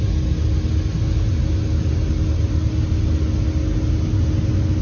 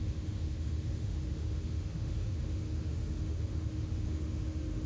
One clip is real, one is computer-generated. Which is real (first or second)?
first